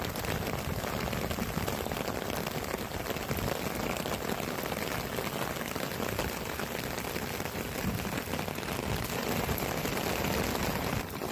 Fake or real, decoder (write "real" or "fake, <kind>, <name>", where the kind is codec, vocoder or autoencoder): real